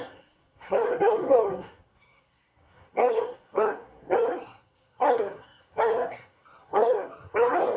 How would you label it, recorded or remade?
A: remade